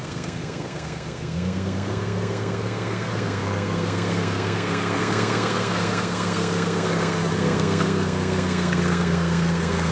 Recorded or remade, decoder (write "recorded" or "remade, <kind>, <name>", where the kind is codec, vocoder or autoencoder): remade, codec, SNAC